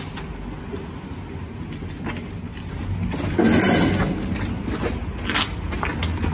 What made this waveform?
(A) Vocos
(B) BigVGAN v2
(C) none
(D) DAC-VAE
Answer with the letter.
C